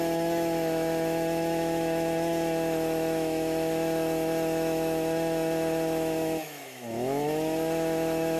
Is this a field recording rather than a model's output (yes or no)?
no